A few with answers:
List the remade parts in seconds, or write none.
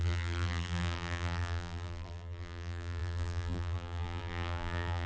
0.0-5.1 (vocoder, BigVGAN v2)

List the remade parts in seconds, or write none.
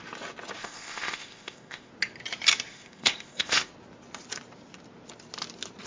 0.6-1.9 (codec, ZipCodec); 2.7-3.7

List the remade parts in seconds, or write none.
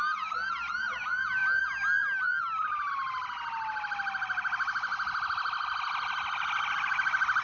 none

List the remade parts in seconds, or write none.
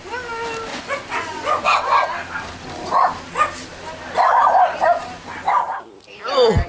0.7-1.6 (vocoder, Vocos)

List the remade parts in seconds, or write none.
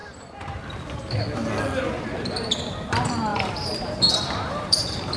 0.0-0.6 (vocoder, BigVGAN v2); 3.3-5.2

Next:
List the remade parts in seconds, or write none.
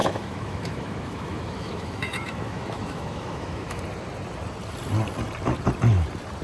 0.0-3.8 (autoencoder, DAC-VAE)